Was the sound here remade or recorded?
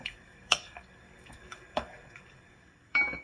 remade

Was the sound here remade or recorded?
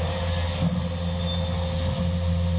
recorded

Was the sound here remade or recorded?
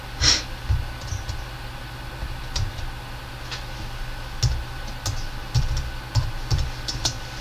recorded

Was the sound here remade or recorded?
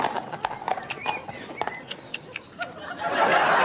recorded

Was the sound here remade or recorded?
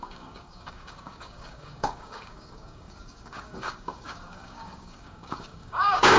remade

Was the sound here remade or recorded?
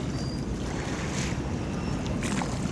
recorded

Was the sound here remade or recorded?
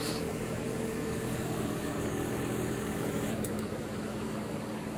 remade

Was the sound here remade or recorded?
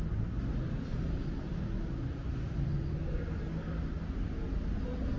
recorded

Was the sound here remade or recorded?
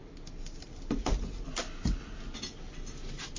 recorded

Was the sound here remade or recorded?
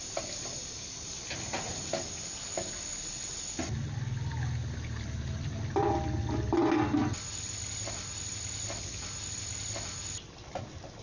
recorded